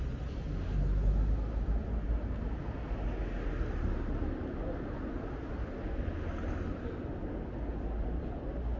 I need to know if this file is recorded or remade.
recorded